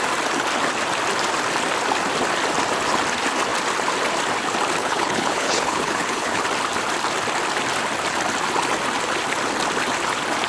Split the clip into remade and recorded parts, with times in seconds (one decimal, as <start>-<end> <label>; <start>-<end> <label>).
0.0-4.8 recorded; 4.8-6.4 remade; 6.4-10.5 recorded